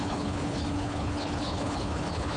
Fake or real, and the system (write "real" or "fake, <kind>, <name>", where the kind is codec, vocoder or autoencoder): fake, codec, HILCodec